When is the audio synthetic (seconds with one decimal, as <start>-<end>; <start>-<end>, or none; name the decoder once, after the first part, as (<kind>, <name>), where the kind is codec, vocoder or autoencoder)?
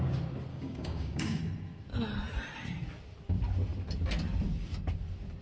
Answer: 0.5-1.4 (codec, DAC)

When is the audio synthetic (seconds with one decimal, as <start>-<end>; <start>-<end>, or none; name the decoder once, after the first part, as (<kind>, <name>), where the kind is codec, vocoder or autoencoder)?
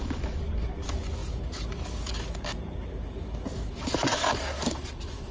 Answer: 0.0-5.3 (codec, DAC)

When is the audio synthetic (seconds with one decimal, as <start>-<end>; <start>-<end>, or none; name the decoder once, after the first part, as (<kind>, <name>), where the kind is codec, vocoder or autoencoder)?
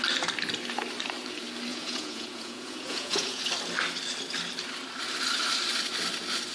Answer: 1.7-3.4 (vocoder, Vocos)